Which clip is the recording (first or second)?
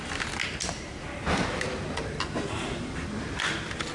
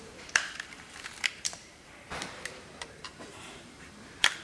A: first